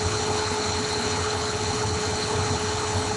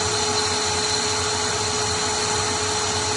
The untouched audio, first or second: second